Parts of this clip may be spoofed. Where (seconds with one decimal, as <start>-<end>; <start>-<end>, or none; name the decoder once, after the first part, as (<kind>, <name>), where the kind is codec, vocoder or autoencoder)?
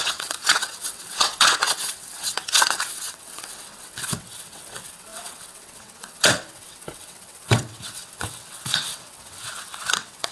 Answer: 0.0-10.3 (vocoder, WaveNeXt)